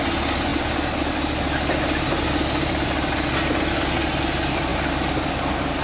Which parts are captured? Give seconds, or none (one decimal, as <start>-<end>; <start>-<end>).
0.0-5.8